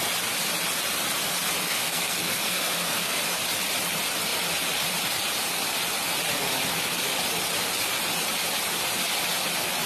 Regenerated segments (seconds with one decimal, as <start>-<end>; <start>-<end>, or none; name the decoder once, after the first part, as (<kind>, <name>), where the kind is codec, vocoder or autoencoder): 1.7-3.2 (codec, SNAC)